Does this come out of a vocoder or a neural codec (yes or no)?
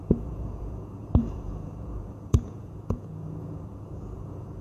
yes